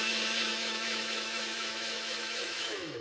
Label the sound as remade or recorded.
remade